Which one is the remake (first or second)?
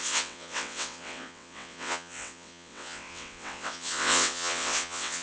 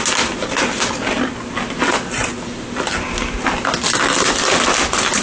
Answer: first